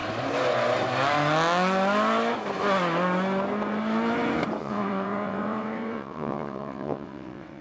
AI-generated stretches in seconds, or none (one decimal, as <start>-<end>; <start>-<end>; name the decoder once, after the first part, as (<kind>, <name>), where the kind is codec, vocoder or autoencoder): 4.6-7.6 (vocoder, WaveNeXt)